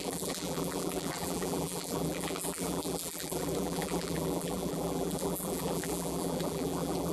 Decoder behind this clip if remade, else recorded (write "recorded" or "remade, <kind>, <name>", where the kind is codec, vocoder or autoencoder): remade, vocoder, BigVGAN v2